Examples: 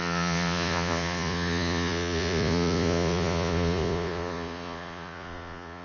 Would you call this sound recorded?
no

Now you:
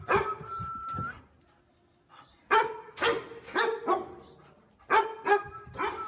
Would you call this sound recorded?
yes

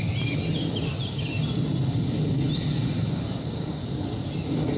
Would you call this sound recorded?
yes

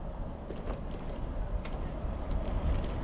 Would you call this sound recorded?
yes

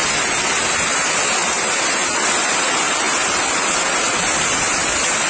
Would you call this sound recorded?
yes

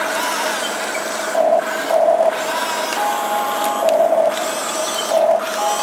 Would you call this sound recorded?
yes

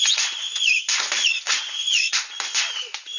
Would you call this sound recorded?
no